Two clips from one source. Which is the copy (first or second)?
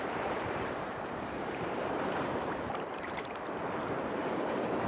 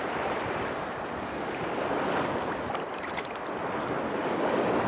first